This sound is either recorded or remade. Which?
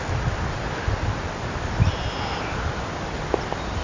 recorded